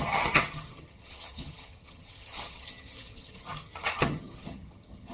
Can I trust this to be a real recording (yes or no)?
no